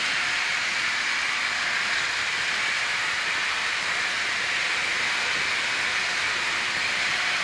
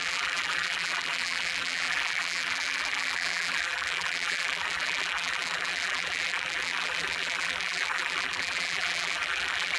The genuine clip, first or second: first